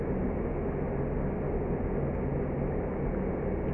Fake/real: real